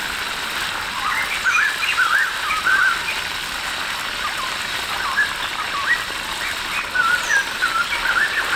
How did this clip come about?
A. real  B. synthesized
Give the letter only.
A